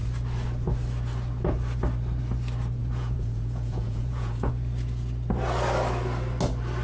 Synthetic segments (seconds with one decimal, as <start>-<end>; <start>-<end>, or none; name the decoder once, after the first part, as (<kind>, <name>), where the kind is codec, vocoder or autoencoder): 2.8-4.5 (vocoder, Vocos)